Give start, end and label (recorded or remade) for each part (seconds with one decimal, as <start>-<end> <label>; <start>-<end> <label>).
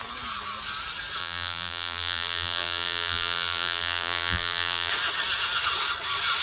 0.0-1.2 recorded; 1.2-4.9 remade; 4.9-6.4 recorded